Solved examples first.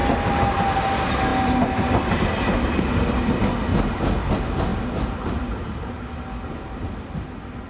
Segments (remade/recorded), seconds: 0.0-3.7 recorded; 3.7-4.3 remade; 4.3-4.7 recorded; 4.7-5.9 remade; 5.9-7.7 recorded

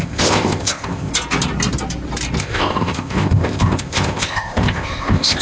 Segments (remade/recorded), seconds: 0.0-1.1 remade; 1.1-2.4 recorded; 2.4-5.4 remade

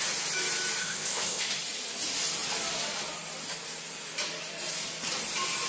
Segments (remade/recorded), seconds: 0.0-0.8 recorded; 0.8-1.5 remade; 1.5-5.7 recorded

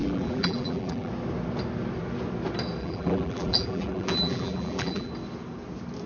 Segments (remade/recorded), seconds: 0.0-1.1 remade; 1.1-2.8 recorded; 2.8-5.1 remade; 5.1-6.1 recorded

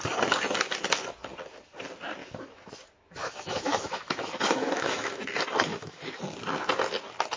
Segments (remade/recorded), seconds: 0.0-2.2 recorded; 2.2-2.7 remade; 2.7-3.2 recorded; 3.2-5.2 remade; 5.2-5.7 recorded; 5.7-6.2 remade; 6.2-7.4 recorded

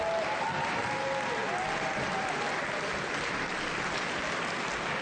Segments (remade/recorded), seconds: 0.0-5.0 recorded

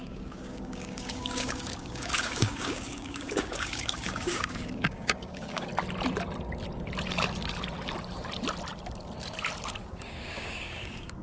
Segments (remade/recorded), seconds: 0.0-5.7 remade; 5.7-9.8 recorded; 9.8-11.2 remade

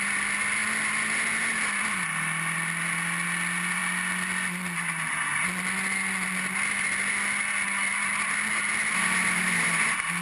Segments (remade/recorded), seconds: 0.0-10.2 recorded